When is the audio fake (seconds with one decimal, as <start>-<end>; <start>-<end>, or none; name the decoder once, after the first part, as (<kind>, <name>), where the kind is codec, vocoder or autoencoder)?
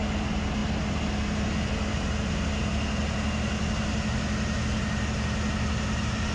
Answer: none